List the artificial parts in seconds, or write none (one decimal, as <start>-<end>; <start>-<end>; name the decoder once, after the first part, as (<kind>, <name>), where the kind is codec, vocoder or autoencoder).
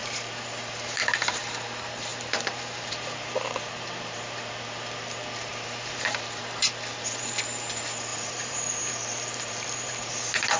0.0-1.4 (vocoder, BigVGAN v2); 2.1-4.5; 5.5-6.6; 8.1-10.1